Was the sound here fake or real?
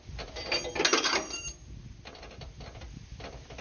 real